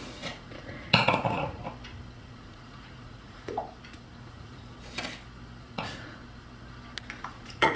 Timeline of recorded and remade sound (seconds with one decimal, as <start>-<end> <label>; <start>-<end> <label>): 0.0-1.6 remade; 1.6-2.2 recorded; 2.2-3.6 remade; 3.6-4.2 recorded; 4.2-4.7 remade; 4.7-5.6 recorded; 5.6-6.2 remade; 6.2-7.2 recorded; 7.2-7.8 remade